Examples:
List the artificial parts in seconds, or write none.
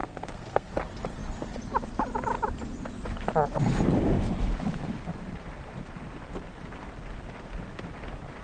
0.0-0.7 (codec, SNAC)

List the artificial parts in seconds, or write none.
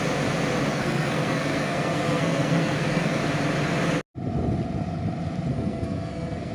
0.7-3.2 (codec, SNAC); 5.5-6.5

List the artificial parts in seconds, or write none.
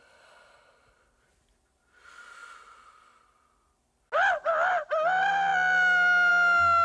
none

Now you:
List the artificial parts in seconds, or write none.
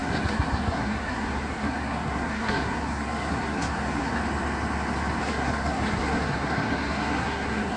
0.0-4.1 (codec, SNAC); 5.2-7.8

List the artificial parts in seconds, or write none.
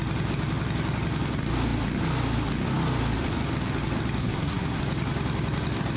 4.2-4.8 (codec, SNAC)